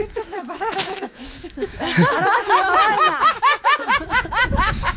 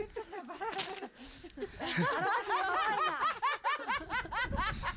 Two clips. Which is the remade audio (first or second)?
first